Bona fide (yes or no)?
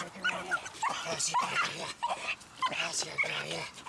no